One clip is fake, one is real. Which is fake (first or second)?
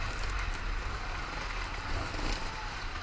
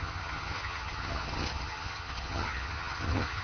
second